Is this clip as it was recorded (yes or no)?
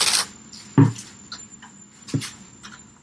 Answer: yes